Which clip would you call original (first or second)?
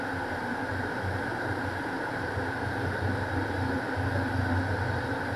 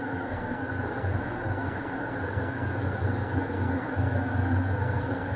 first